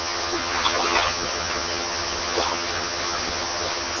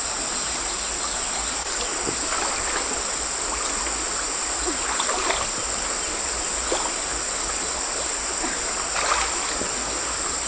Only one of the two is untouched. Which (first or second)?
second